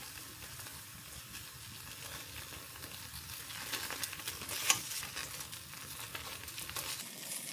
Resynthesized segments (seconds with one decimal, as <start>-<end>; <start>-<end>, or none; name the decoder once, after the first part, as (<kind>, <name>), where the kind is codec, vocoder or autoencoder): none